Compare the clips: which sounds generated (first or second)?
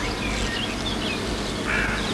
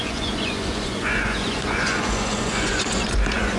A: second